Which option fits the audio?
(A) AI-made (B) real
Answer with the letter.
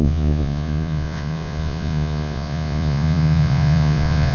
A